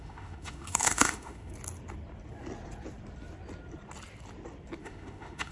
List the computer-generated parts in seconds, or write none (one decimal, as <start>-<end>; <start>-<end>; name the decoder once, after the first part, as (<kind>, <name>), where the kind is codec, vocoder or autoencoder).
0.0-1.5 (autoencoder, DAC-VAE); 4.8-5.5